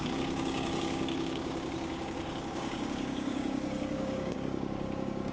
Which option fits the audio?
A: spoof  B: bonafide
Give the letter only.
A